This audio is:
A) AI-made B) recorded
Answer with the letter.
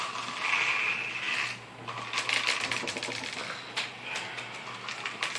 B